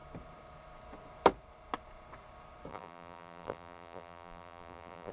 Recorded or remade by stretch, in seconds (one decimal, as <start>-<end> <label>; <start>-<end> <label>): 0.0-2.7 recorded; 2.7-5.1 remade